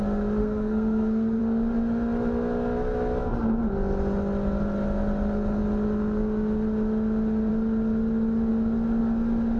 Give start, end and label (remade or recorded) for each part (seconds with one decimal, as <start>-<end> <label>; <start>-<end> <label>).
0.0-0.4 recorded; 0.4-1.4 remade; 1.4-9.6 recorded